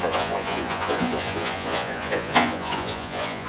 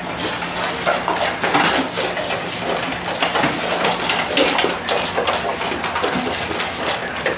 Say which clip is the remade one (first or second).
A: first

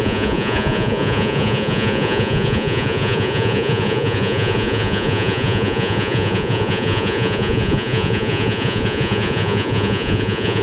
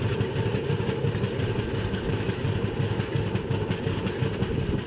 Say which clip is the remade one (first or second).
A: first